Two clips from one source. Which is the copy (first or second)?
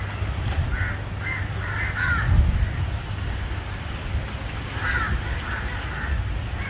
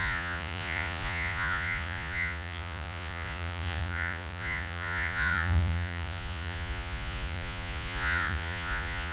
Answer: second